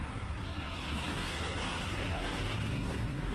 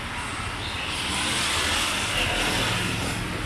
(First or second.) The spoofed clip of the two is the first